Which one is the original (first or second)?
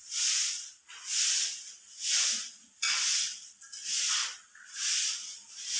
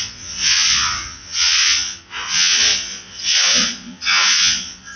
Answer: first